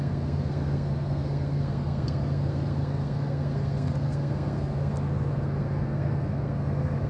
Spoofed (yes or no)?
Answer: yes